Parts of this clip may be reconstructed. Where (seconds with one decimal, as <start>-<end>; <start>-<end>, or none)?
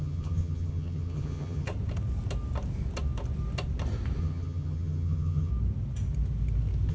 0.0-1.7; 4.2-5.5